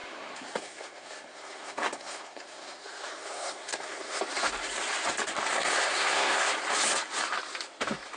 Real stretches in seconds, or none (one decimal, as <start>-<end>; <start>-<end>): 4.2-5.5; 6.5-8.2